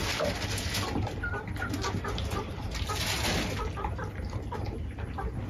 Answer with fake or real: real